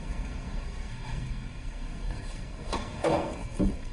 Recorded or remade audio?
remade